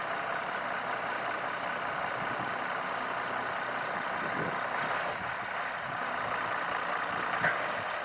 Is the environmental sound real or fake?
real